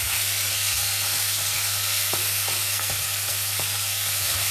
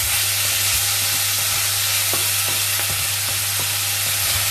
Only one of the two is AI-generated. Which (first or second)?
first